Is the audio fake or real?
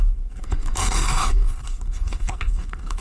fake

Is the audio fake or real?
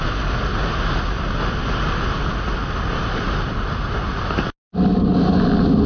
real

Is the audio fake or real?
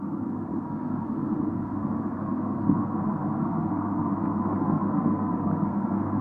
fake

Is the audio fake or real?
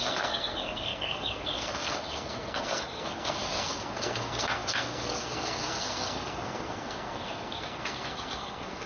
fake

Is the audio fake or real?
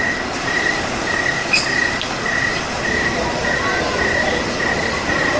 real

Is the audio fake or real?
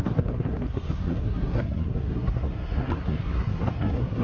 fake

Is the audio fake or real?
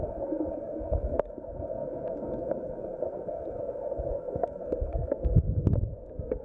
fake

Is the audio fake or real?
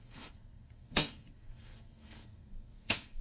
fake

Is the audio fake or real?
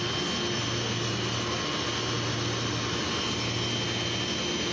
real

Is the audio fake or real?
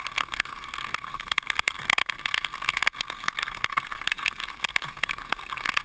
fake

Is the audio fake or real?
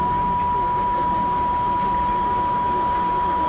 real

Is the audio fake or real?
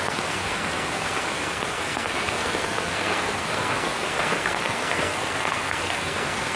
fake